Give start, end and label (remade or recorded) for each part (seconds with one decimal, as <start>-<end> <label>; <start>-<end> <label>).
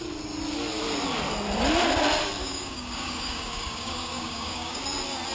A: 0.0-2.4 recorded; 2.4-4.8 remade; 4.8-5.3 recorded